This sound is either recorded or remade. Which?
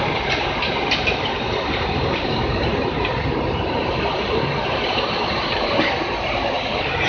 remade